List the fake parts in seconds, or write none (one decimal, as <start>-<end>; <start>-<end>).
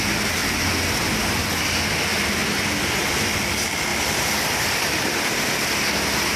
2.4-3.1; 3.9-5.3